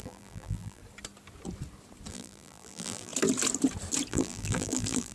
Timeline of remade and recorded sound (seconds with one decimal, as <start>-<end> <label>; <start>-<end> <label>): 0.0-0.8 remade; 0.8-2.1 recorded; 2.1-3.1 remade; 3.1-4.1 recorded; 4.1-5.1 remade